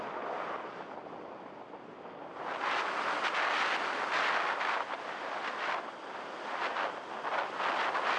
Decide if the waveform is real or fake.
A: real